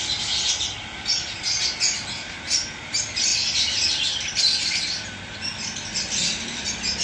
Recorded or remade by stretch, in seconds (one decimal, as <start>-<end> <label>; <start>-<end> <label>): 0.0-7.0 recorded